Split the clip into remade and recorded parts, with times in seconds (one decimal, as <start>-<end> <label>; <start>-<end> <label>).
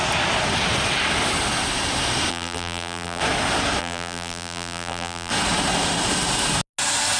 0.0-2.3 recorded; 2.3-3.2 remade; 3.2-3.8 recorded; 3.8-5.3 remade; 5.3-7.2 recorded